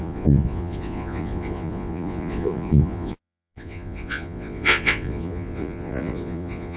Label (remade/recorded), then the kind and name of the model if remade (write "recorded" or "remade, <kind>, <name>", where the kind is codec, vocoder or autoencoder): remade, vocoder, Vocos